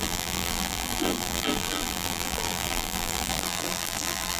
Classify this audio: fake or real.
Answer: fake